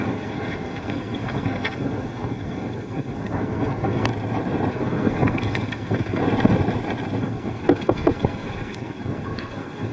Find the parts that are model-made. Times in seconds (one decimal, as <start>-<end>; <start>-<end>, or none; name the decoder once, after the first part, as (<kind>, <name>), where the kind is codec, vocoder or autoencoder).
0.0-4.1 (codec, SNAC); 4.7-6.2; 7.2-9.9